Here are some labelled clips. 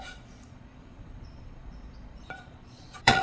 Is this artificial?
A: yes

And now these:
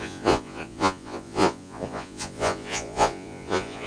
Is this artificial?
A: yes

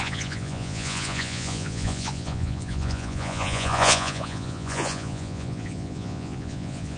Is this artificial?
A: yes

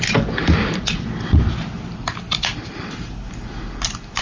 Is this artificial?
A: no